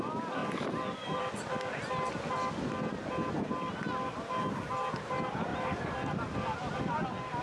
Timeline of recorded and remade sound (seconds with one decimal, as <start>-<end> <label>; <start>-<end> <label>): 0.0-0.4 recorded; 0.4-1.2 remade; 1.2-5.5 recorded; 5.5-6.8 remade; 6.8-7.4 recorded